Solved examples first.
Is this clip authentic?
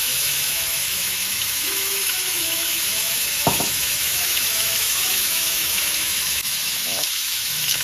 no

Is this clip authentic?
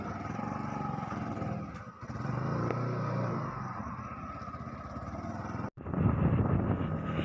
yes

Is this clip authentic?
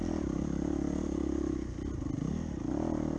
yes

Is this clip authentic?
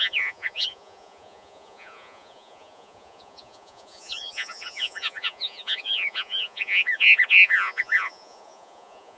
no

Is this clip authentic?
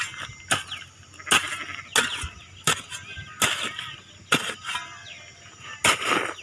yes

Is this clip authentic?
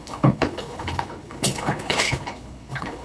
no